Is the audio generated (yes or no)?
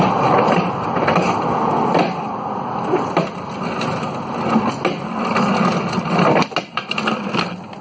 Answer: no